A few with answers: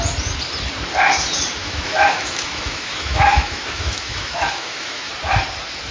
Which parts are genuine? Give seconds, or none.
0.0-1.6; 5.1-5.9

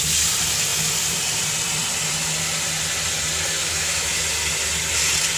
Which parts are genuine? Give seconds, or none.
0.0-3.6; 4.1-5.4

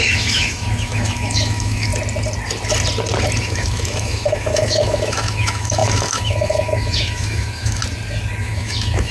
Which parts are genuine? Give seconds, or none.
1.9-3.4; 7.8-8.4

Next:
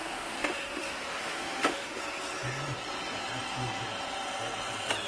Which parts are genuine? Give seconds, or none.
2.0-5.1

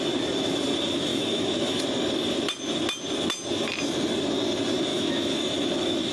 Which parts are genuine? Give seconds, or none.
0.0-1.1; 1.8-4.9; 5.4-6.1

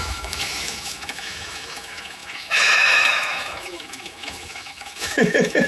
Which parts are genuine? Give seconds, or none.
none

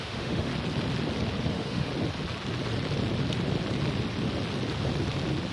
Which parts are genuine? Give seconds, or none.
0.5-1.5; 1.9-5.5

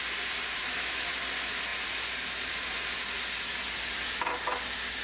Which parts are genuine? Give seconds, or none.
0.0-0.6; 1.1-5.0